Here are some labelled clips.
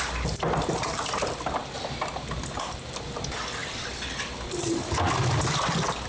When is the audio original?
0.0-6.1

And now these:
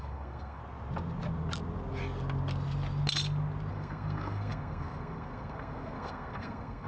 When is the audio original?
0.6-3.7

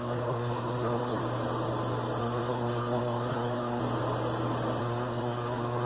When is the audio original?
1.2-2.2; 3.8-4.8

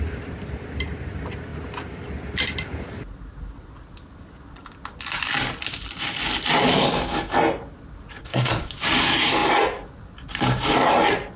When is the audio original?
0.0-8.2; 8.7-11.4